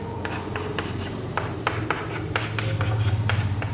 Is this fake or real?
real